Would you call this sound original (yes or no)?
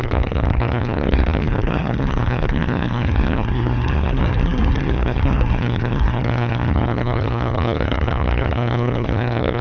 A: no